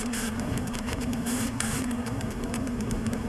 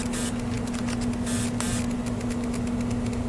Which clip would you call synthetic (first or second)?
first